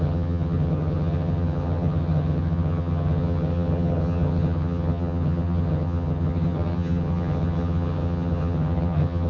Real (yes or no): no